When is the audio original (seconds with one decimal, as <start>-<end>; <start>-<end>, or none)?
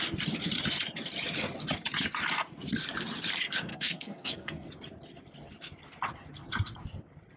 0.0-3.7; 4.7-7.4